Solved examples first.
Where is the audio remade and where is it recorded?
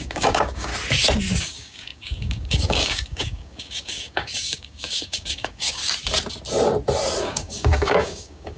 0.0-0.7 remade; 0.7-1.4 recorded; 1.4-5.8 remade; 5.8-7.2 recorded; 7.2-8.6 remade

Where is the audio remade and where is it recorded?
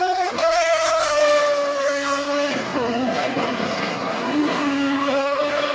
0.0-1.2 remade; 1.2-1.8 recorded; 1.8-5.7 remade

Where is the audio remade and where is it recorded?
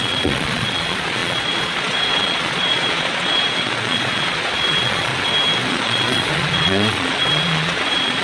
0.0-5.1 remade; 5.1-5.7 recorded; 5.7-8.2 remade